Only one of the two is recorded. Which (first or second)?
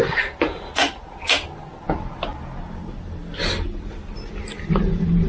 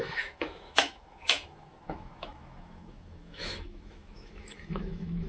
first